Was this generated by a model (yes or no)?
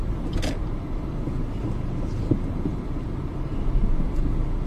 no